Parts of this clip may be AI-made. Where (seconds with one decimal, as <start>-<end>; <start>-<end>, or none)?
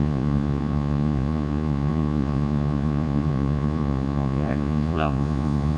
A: 0.0-5.8